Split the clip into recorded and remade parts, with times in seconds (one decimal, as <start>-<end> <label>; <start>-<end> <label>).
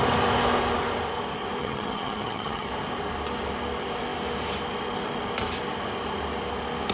0.0-1.6 recorded; 1.6-2.7 remade; 2.7-6.9 recorded